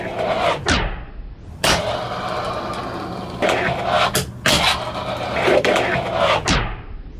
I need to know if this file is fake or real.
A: real